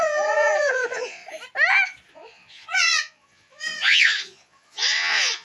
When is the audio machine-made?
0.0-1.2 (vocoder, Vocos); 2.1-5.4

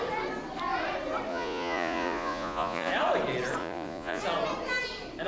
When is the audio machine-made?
1.3-2.9 (vocoder, Vocos); 3.6-4.2

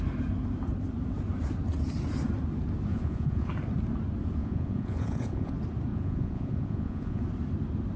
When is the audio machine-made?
2.9-3.5 (vocoder, Vocos); 4.4-5.5; 5.9-7.2

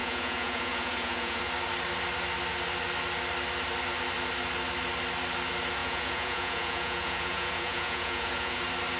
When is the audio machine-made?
0.0-1.4 (vocoder, Vocos); 5.8-8.6

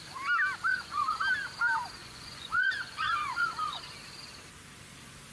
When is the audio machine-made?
0.7-1.2 (vocoder, Vocos); 2.0-3.8

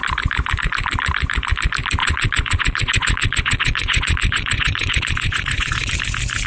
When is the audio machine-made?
2.0-5.9 (vocoder, Vocos)

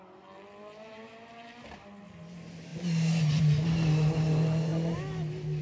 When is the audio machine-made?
none

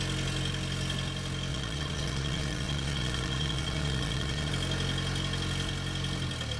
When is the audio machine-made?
1.5-4.5 (vocoder, Vocos)